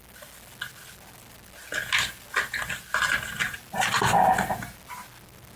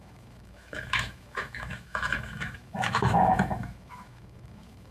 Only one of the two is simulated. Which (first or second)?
second